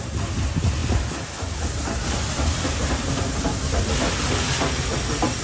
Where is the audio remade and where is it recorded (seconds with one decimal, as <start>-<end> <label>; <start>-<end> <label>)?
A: 0.0-5.4 recorded